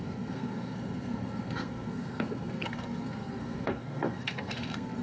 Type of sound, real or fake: fake